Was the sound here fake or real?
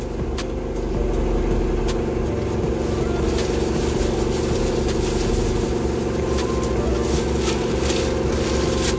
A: real